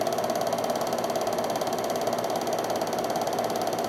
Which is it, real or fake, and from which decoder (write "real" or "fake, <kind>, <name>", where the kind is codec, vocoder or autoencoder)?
real